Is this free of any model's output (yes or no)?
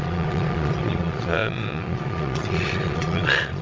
no